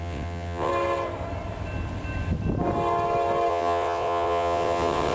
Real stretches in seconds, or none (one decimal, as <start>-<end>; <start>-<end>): 0.7-3.5